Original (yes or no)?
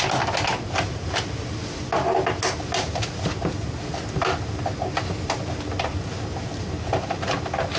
yes